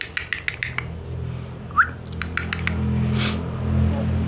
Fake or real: real